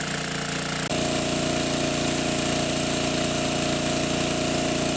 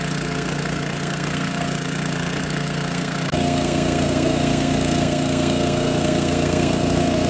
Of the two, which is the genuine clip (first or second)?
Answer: first